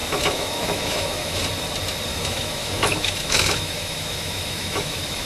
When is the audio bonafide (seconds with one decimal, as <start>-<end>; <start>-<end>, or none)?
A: 1.4-2.1